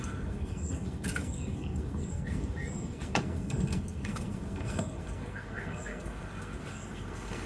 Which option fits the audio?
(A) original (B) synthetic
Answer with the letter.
B